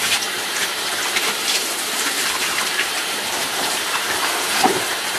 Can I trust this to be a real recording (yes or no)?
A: no